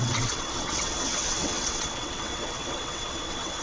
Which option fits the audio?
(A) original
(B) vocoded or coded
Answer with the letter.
B